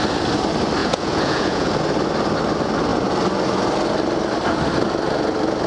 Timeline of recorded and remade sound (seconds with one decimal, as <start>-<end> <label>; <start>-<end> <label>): 0.0-0.8 recorded; 0.8-1.7 remade; 1.7-5.7 recorded